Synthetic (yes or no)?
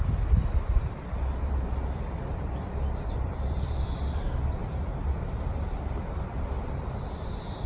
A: yes